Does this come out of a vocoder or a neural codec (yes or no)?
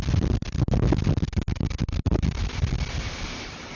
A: no